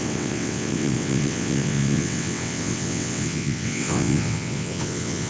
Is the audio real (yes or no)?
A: no